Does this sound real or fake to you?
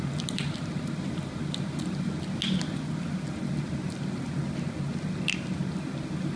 real